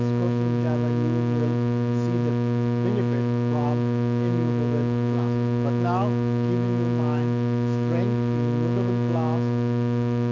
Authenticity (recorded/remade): recorded